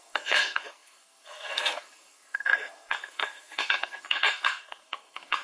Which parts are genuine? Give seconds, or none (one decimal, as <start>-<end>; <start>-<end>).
none